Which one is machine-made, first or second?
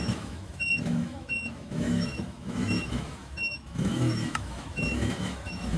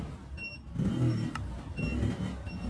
first